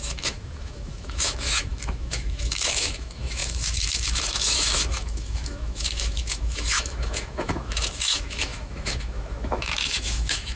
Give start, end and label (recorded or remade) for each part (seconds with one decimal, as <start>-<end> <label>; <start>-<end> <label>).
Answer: 0.0-10.6 remade